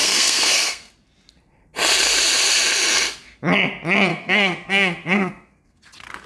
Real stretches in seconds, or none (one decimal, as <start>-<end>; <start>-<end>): 0.9-4.1; 5.8-6.3